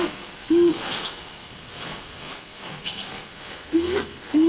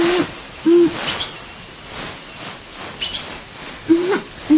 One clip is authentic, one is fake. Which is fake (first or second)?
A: first